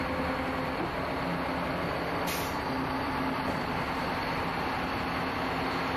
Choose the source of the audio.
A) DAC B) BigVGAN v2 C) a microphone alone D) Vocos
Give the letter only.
C